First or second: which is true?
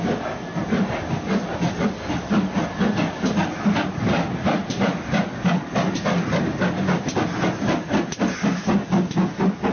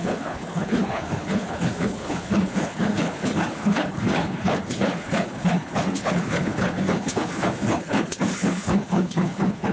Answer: first